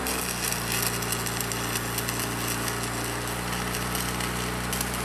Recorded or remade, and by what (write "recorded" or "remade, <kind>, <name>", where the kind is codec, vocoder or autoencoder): recorded